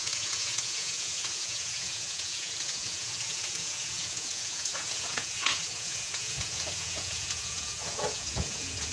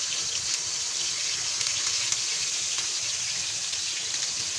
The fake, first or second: first